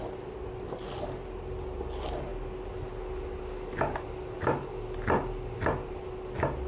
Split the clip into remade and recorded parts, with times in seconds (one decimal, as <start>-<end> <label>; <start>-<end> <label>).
0.0-6.7 recorded